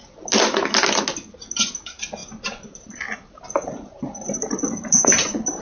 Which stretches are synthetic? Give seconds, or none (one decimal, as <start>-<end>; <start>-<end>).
2.2-5.6